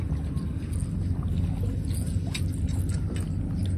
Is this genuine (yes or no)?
yes